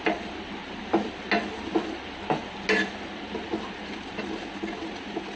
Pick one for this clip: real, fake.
real